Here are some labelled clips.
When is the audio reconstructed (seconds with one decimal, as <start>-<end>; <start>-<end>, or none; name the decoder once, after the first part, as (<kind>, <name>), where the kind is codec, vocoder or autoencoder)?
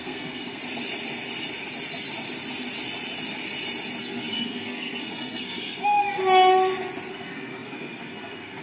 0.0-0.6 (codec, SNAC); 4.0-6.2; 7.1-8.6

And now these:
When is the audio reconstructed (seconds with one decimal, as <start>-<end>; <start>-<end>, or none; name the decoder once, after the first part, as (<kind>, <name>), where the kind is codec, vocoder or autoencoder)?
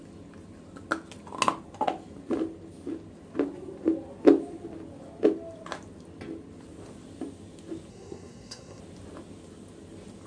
7.9-8.8 (codec, SNAC)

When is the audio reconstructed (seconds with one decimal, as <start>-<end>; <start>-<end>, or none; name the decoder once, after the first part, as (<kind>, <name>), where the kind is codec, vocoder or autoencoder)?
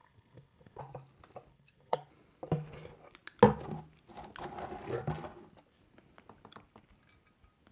0.0-0.8 (codec, SNAC); 1.5-2.1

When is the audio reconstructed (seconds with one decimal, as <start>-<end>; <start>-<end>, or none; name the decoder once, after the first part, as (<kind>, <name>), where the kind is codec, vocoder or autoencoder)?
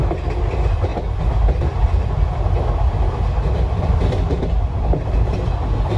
none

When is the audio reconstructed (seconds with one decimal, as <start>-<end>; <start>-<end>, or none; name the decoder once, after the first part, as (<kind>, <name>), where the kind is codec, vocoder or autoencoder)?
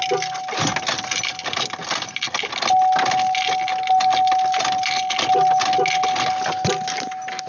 none